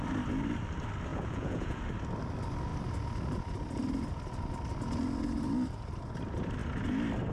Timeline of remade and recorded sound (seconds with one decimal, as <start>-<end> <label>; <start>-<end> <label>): 0.0-1.1 recorded; 1.1-1.8 remade; 1.8-7.3 recorded